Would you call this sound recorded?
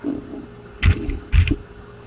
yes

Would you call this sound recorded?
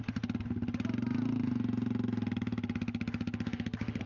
yes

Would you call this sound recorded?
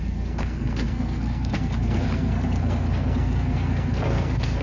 no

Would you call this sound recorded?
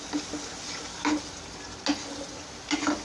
yes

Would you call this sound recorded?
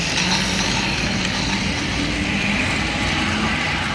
yes